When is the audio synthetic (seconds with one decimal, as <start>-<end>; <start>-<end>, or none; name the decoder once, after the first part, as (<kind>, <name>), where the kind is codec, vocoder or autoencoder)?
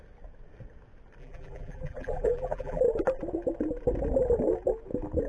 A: 1.2-2.8 (vocoder, BigVGAN v2)